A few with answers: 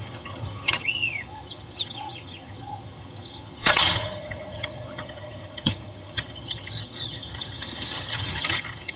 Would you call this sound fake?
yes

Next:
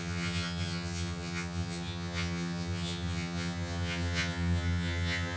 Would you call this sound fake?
yes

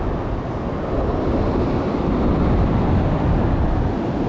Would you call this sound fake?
no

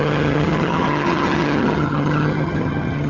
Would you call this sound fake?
yes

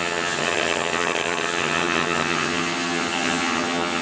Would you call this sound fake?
yes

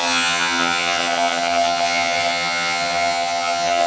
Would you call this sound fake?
yes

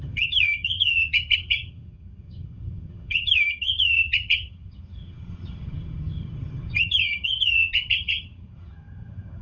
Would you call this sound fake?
yes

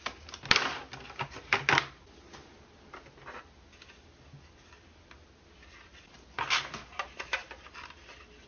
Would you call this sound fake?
no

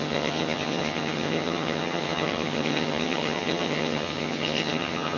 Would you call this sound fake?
yes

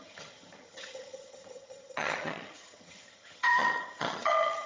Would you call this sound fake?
yes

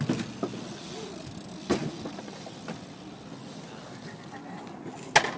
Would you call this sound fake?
no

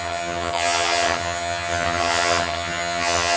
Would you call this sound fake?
yes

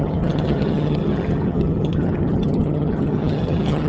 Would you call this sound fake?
yes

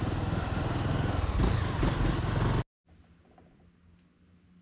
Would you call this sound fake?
no